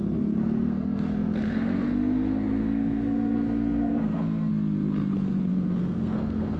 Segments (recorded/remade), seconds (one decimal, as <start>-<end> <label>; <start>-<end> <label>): 0.0-4.5 remade; 4.5-5.5 recorded; 5.5-6.6 remade